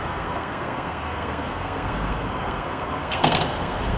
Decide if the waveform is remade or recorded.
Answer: remade